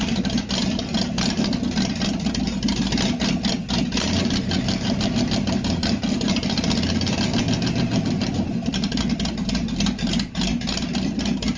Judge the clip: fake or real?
real